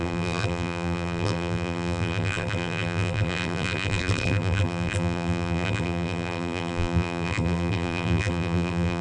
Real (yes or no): no